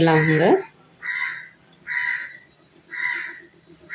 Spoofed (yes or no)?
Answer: no